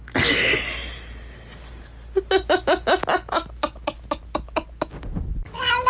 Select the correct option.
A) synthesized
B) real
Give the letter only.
B